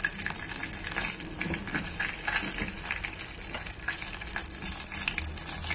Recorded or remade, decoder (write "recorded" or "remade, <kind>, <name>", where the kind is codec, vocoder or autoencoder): recorded